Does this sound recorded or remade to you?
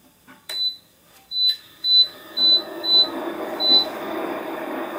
remade